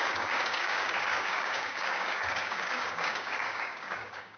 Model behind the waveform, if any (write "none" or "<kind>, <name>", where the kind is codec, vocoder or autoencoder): codec, DAC